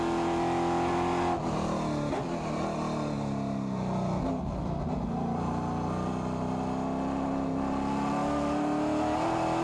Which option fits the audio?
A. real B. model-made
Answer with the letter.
A